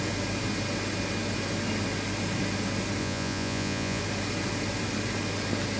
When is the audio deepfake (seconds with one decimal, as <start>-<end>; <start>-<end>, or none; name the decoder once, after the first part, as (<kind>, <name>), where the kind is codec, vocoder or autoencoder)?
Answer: 3.0-4.0 (vocoder, Vocos)